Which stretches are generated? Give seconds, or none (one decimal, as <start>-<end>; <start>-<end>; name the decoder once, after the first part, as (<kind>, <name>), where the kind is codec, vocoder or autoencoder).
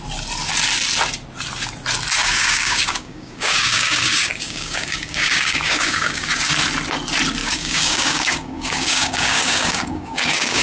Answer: 2.2-6.5 (codec, DAC); 7.4-10.6